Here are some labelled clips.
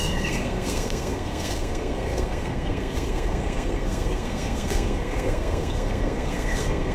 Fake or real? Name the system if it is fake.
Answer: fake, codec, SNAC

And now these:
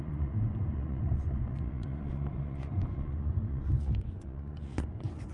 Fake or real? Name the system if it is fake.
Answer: fake, vocoder, Vocos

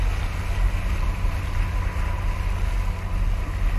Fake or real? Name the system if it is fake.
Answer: real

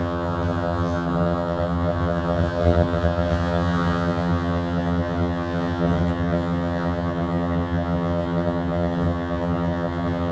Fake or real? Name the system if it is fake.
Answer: fake, vocoder, HiFi-GAN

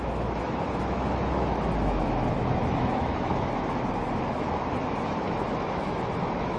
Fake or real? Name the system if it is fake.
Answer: fake, autoencoder, DAC-VAE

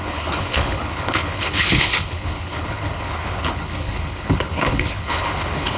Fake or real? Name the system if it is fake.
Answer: fake, codec, HILCodec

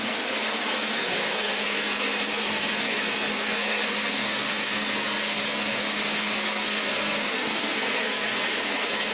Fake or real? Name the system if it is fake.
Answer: fake, codec, SNAC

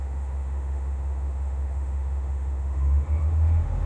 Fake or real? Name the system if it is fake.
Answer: fake, autoencoder, DAC-VAE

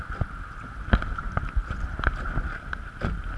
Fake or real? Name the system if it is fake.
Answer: real